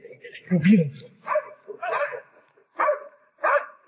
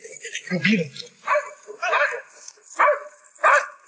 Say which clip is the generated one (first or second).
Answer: first